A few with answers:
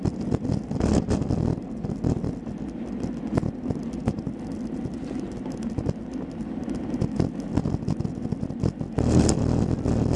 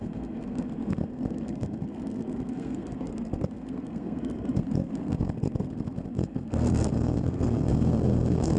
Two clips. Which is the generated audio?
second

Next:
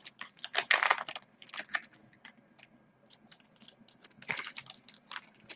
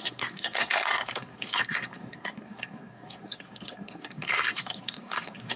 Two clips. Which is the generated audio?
second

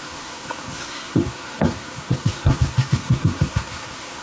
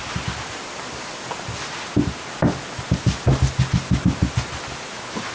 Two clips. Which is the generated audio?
first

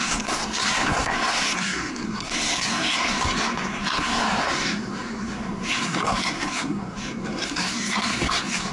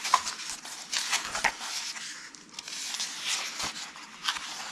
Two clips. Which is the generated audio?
first